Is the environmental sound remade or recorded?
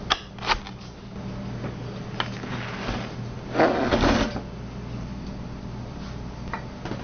recorded